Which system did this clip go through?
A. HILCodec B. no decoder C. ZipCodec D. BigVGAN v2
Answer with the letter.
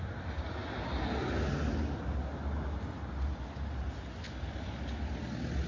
B